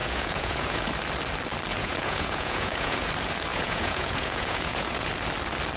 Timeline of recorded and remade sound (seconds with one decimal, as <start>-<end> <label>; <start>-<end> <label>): 0.0-0.9 remade; 0.9-1.7 recorded; 1.7-3.1 remade; 3.1-3.5 recorded; 3.5-5.1 remade; 5.1-5.8 recorded